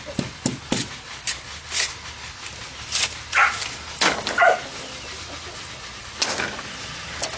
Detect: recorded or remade recorded